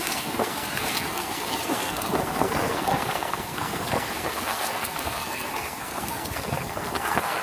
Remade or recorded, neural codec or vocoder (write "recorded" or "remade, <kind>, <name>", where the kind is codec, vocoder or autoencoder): remade, codec, SNAC